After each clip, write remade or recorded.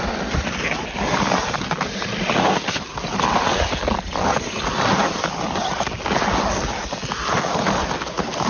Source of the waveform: recorded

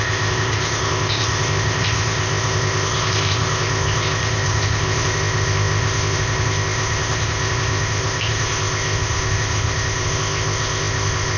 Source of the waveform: remade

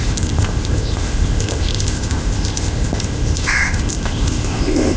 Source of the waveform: remade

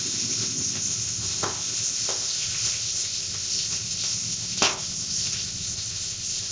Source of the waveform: remade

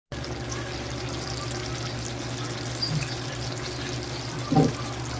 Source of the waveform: recorded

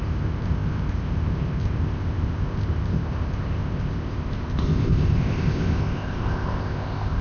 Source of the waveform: remade